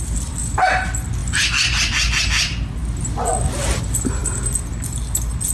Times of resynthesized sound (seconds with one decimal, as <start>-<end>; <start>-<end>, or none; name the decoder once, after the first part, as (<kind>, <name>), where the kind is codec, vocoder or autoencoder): none